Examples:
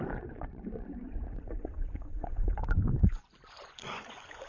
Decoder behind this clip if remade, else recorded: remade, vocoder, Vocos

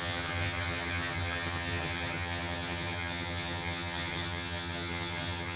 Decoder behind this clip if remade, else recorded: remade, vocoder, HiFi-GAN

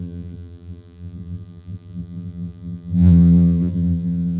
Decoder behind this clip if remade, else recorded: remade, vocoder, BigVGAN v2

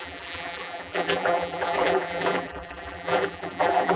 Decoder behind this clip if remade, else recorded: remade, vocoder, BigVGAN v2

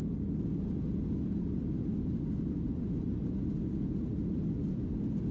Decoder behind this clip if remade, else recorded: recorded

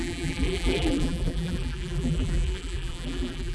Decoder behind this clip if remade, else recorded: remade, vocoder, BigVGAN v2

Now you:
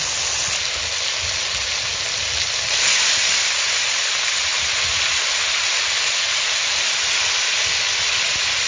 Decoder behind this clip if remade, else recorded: recorded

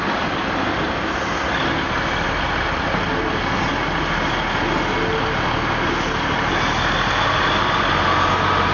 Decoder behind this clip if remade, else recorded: recorded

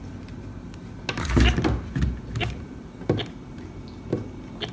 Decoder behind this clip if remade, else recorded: recorded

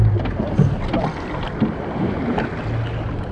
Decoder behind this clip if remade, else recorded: recorded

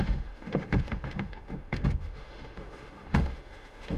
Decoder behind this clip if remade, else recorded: remade, autoencoder, DAC-VAE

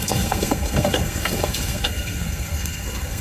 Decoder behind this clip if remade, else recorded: remade, codec, SNAC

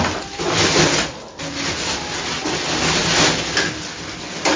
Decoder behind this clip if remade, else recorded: recorded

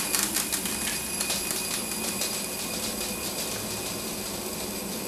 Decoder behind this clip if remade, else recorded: recorded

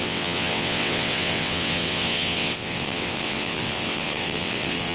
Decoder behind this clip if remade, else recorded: remade, vocoder, WaveNeXt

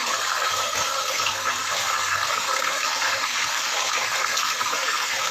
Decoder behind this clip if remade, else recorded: remade, codec, SNAC